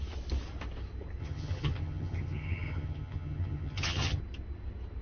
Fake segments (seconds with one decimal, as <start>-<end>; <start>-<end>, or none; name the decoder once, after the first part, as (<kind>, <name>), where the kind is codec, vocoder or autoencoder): 1.2-4.2 (vocoder, HiFi-GAN)